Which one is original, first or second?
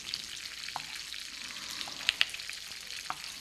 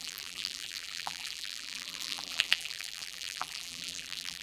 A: first